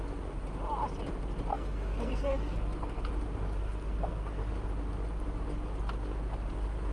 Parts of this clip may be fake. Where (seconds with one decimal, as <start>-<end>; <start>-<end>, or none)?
1.5-3.1; 3.6-4.5